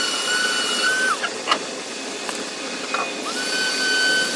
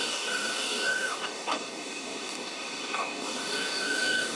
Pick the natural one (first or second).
first